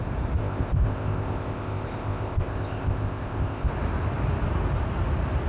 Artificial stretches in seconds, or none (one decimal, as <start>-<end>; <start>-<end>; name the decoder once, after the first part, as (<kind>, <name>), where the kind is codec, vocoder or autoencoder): 0.4-3.7 (codec, ZipCodec)